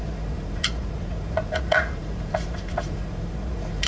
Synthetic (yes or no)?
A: yes